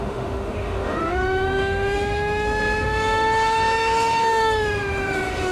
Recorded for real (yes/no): no